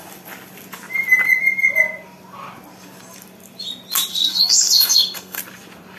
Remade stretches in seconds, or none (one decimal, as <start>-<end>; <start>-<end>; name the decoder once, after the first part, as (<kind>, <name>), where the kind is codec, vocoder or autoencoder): 4.1-5.4 (codec, SNAC)